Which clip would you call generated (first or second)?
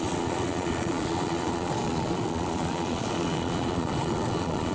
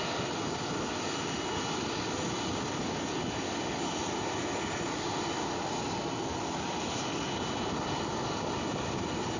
first